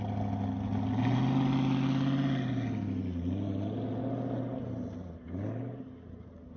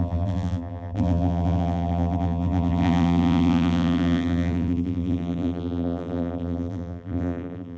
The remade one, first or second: second